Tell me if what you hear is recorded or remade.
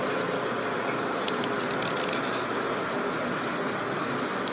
recorded